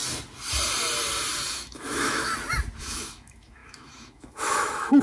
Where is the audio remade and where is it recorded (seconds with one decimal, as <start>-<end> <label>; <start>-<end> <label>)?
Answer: 0.0-1.5 recorded; 1.5-2.3 remade; 2.3-2.8 recorded; 2.8-5.0 remade